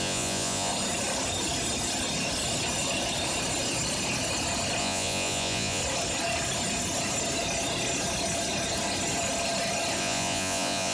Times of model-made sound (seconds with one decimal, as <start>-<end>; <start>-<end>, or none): 0.0-0.7; 4.8-5.8; 10.0-10.9